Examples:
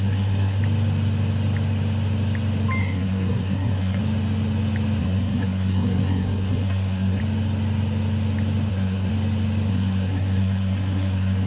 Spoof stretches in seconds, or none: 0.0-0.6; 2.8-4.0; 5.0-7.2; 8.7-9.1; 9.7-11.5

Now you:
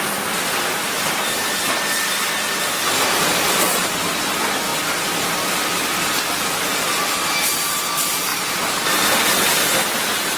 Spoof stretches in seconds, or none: none